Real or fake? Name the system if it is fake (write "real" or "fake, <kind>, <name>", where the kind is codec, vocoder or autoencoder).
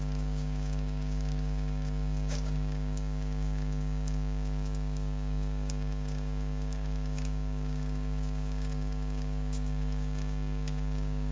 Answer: fake, codec, DAC